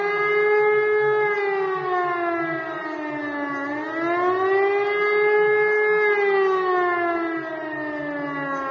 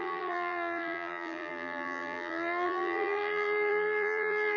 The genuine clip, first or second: first